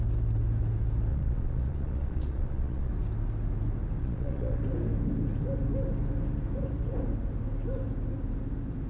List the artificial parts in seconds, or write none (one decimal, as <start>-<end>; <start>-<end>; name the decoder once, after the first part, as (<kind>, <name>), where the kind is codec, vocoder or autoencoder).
1.1-2.9 (vocoder, Vocos); 4.0-4.6